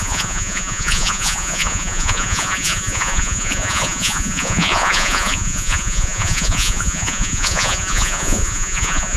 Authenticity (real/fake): fake